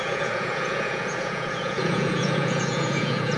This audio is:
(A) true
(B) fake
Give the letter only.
B